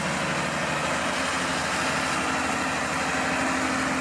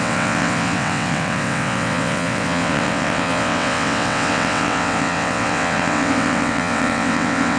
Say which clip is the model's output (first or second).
second